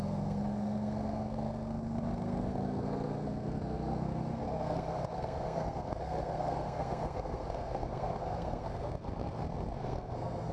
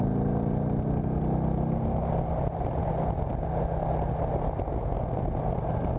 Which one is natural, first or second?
second